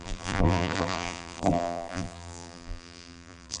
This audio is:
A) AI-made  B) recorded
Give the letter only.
A